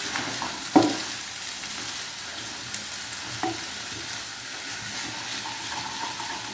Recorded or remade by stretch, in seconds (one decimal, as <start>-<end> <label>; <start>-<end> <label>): 0.0-4.3 recorded; 4.3-4.9 remade; 4.9-6.5 recorded